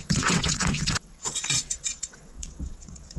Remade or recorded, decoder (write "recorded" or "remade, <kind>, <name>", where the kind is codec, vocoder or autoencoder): remade, vocoder, WaveNeXt